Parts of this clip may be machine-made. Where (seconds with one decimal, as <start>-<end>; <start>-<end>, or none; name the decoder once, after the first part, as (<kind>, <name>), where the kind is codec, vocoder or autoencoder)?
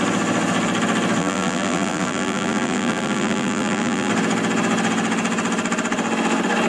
1.2-4.1 (vocoder, BigVGAN v2)